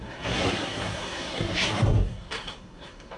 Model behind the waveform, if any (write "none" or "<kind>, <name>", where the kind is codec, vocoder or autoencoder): codec, SNAC